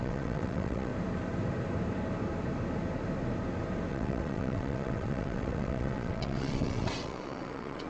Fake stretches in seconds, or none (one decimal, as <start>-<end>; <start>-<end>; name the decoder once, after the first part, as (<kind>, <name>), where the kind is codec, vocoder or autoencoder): 0.0-0.9 (vocoder, WaveNeXt); 3.9-7.9